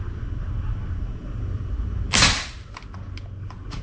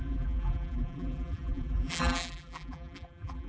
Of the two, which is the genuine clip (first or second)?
first